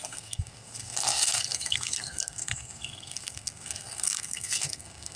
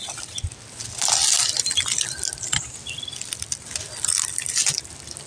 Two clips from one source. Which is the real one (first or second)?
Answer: second